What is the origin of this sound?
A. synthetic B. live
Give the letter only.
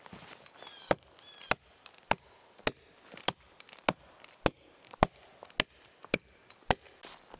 B